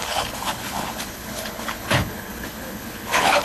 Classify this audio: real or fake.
fake